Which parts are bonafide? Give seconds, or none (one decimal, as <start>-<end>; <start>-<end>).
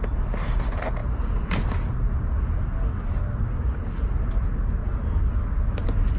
0.0-6.2